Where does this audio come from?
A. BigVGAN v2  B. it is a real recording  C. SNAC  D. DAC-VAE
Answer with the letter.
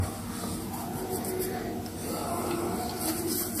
B